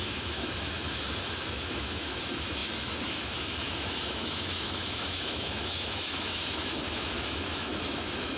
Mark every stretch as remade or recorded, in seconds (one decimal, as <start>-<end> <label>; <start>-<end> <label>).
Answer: 0.0-8.4 remade